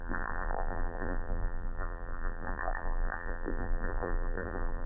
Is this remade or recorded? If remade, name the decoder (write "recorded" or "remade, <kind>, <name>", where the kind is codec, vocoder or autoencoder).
remade, vocoder, BigVGAN v2